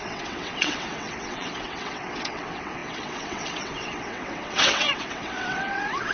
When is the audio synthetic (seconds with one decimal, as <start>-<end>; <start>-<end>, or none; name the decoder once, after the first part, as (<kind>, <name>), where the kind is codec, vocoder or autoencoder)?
0.0-6.1 (vocoder, WaveNeXt)